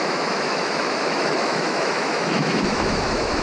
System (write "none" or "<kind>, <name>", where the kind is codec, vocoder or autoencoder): autoencoder, DAC-VAE